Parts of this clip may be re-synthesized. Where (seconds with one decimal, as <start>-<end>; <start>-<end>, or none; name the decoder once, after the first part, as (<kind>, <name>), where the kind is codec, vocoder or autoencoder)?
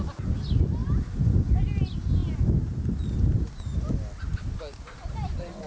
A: none